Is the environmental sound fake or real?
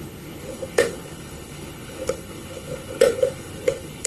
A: fake